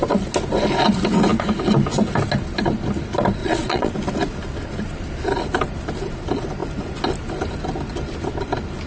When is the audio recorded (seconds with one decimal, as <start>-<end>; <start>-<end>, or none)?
0.0-3.4; 3.9-8.9